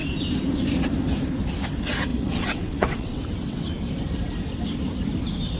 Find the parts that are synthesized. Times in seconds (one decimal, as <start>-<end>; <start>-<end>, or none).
2.1-3.7